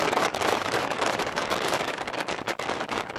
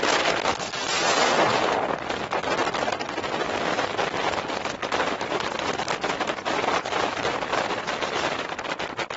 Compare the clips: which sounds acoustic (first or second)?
second